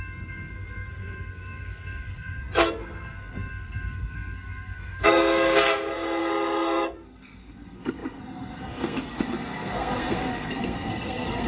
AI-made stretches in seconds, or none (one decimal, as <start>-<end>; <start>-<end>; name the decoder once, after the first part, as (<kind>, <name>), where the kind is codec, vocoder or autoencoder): 0.0-11.5 (codec, SNAC)